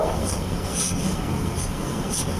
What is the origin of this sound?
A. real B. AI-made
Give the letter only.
B